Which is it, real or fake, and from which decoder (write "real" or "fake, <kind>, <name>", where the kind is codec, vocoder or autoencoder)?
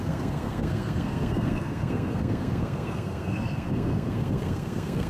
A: fake, codec, SNAC